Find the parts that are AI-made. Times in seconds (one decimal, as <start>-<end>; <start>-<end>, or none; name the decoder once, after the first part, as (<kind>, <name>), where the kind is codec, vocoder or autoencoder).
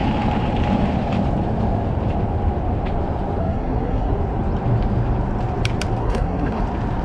3.4-4.1 (codec, SNAC); 6.0-6.6